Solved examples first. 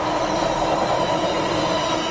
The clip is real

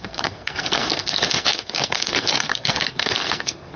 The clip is fake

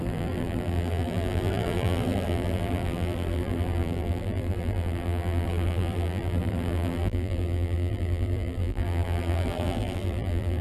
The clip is fake